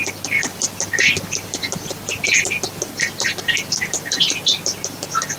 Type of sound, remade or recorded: recorded